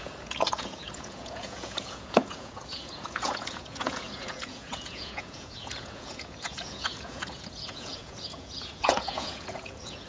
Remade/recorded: remade